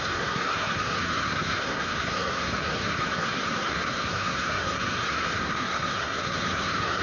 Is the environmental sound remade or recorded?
remade